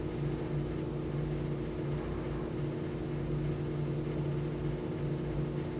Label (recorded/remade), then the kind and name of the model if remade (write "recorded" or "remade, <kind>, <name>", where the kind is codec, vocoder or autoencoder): recorded